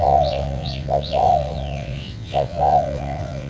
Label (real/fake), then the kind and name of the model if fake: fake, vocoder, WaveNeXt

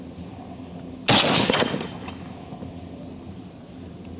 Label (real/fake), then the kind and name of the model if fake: real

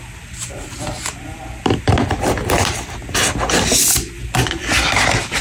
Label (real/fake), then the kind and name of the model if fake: real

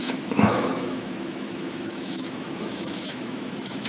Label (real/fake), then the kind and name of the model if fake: fake, autoencoder, DAC-VAE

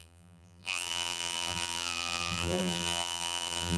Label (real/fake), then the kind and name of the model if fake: fake, vocoder, BigVGAN v2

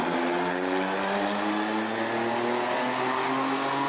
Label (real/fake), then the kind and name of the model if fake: real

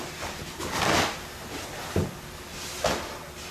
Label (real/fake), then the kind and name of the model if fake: real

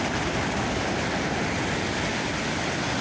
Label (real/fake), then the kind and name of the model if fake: real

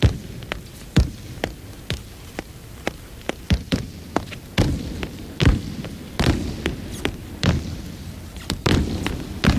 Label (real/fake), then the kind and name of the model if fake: real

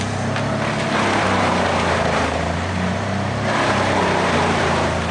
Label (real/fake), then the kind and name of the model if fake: fake, vocoder, BigVGAN v2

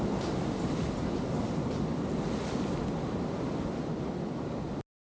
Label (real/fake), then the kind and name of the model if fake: real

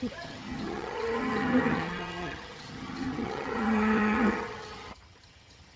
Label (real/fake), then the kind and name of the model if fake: fake, vocoder, HiFi-GAN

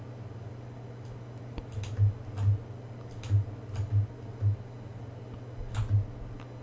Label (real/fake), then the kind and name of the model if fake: real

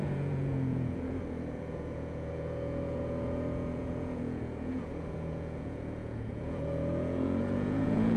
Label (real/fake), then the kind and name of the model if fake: fake, vocoder, Vocos